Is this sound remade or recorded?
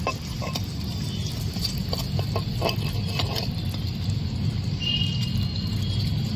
recorded